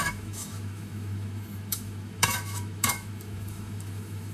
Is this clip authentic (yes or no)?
no